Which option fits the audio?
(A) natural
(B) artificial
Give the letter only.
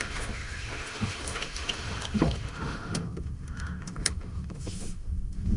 B